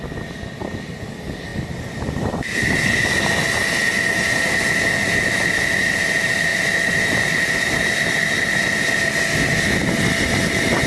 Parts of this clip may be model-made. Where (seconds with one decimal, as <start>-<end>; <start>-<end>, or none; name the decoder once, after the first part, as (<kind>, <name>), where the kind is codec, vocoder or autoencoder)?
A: none